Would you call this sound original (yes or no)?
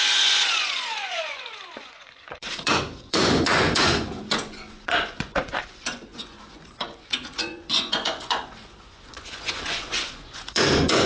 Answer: no